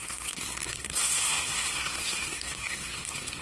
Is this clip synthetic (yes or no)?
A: yes